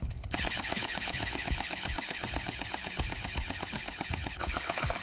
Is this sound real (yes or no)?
no